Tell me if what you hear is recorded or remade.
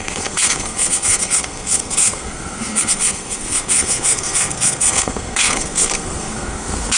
remade